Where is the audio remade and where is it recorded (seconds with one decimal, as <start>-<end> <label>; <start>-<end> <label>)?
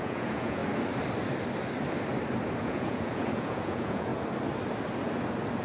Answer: 0.0-0.6 remade; 0.6-2.6 recorded; 2.6-4.1 remade; 4.1-5.6 recorded